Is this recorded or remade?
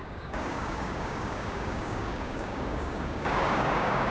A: remade